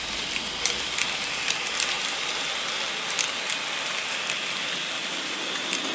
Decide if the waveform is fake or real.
real